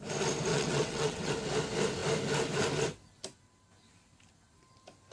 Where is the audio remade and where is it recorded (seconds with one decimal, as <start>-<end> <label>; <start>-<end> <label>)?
0.0-0.5 recorded; 0.5-1.3 remade; 1.3-5.1 recorded